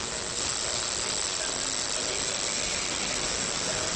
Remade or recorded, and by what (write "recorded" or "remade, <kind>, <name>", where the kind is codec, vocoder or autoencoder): recorded